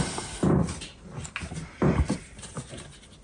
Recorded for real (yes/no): yes